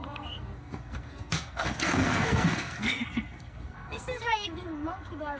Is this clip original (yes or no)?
no